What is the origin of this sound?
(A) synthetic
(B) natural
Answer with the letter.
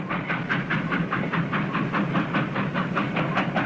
B